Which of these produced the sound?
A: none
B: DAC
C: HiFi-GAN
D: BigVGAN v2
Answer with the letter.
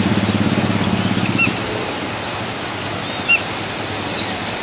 A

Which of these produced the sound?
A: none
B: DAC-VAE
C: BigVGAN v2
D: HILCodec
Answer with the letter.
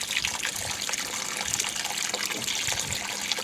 A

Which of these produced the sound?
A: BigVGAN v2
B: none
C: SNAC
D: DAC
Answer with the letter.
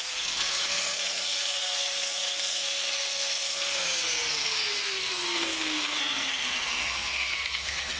C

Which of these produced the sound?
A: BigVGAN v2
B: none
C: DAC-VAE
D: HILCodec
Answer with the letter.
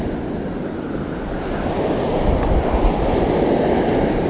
B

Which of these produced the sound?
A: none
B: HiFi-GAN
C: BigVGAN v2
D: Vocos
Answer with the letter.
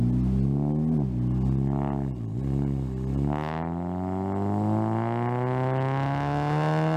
A